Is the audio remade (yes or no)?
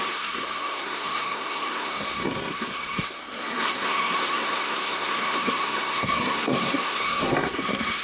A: yes